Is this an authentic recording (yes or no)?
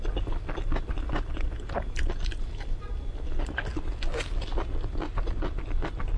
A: yes